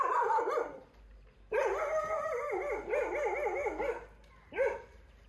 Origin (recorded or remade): recorded